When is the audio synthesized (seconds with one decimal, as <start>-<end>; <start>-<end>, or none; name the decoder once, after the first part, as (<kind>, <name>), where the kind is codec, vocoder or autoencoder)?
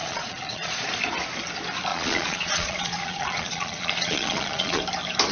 0.0-0.9 (vocoder, Vocos); 1.9-4.8